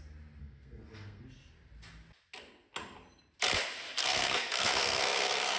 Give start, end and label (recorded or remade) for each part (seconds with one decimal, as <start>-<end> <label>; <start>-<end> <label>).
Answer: 0.0-0.4 recorded; 0.4-1.2 remade; 1.2-4.0 recorded; 4.0-5.6 remade